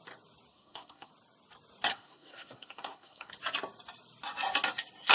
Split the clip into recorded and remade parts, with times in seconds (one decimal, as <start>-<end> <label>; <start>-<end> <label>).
0.0-0.5 recorded; 0.5-1.1 remade; 1.1-1.9 recorded; 1.9-3.3 remade; 3.3-5.1 recorded